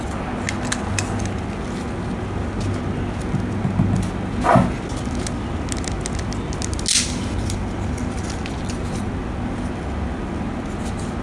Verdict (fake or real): real